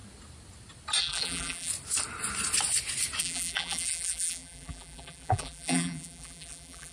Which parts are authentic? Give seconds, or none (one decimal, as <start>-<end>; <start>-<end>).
0.0-1.0; 1.7-3.2